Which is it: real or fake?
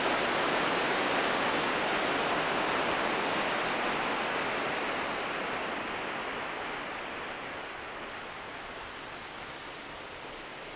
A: real